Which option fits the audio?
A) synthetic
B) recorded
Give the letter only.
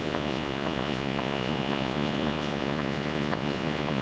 A